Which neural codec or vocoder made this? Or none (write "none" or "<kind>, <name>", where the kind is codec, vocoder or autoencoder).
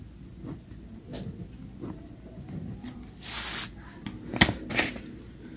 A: none